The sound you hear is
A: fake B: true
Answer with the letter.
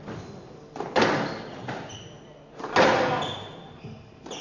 B